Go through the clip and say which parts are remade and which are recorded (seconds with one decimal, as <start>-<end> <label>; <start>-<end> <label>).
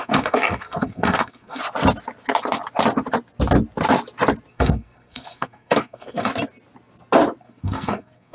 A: 0.0-1.6 remade; 1.6-4.5 recorded; 4.5-6.3 remade; 6.3-7.4 recorded; 7.4-8.3 remade